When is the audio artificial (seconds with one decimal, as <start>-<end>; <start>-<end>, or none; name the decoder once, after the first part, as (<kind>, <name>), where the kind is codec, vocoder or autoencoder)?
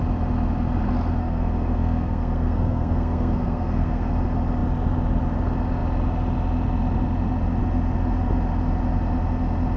1.2-4.1 (codec, SNAC)